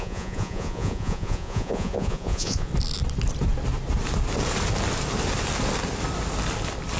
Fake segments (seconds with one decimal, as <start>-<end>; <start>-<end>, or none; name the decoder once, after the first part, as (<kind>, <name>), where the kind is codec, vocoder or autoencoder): 0.0-2.7 (vocoder, Vocos)